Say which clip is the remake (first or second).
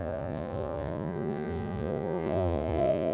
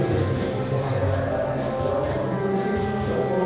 first